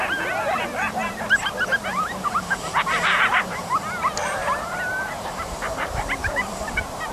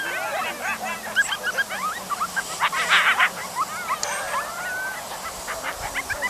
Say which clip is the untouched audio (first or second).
second